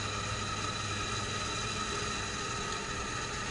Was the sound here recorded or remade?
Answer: recorded